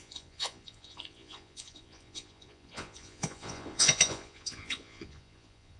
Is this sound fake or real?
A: fake